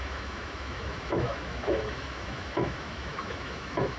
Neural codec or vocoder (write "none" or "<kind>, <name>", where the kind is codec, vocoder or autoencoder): autoencoder, DAC-VAE